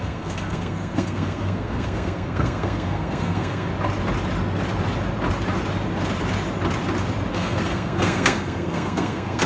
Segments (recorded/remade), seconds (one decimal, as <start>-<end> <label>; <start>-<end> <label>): 0.0-3.7 remade; 3.7-7.3 recorded; 7.3-9.5 remade